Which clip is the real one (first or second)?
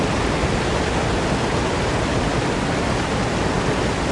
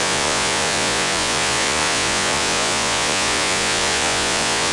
first